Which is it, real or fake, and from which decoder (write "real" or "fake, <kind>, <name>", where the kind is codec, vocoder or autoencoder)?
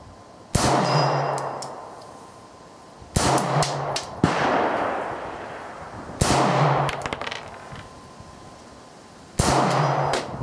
real